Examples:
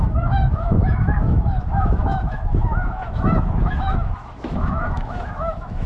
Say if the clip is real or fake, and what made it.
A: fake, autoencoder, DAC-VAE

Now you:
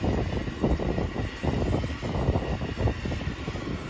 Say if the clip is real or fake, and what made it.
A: real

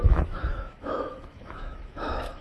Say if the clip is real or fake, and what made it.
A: fake, autoencoder, DAC-VAE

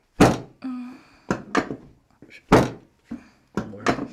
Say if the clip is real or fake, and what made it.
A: real